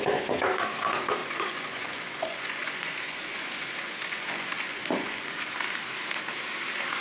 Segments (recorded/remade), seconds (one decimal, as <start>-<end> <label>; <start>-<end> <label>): 0.0-1.2 recorded; 1.2-5.4 remade; 5.4-7.0 recorded